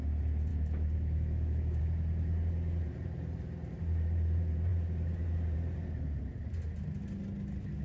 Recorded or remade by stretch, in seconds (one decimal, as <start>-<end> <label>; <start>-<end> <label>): 0.0-0.5 recorded; 0.5-1.8 remade; 1.8-7.8 recorded